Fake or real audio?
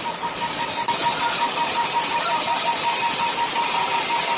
real